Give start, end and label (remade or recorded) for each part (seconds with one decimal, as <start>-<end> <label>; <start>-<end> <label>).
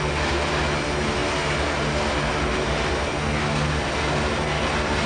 0.0-5.1 recorded